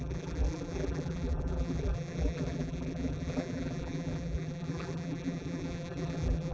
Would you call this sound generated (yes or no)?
yes